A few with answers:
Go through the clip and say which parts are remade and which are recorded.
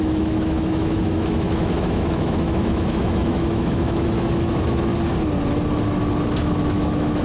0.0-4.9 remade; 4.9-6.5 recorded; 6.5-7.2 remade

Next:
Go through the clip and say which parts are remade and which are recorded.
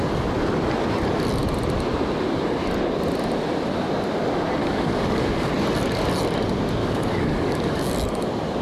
0.0-4.6 recorded; 4.6-5.5 remade; 5.5-6.8 recorded; 6.8-7.9 remade; 7.9-8.6 recorded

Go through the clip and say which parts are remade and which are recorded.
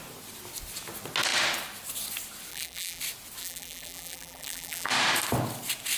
0.0-2.5 recorded; 2.5-3.0 remade; 3.0-3.4 recorded; 3.4-4.9 remade; 4.9-6.0 recorded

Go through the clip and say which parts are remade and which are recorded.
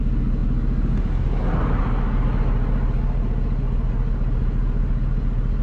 0.0-5.6 recorded